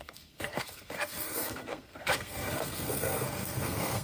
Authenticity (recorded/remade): remade